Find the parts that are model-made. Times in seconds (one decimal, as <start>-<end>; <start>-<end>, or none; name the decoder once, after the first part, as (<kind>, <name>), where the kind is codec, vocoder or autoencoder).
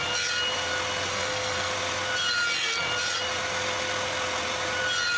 1.1-1.7 (codec, SNAC)